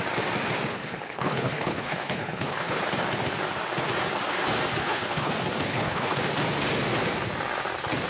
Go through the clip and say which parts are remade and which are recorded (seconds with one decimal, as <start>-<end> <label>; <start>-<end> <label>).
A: 0.0-0.7 recorded; 0.7-2.8 remade; 2.8-4.8 recorded; 4.8-5.3 remade; 5.3-5.7 recorded; 5.7-6.2 remade; 6.2-8.1 recorded